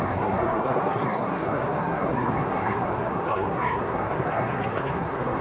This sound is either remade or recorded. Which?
remade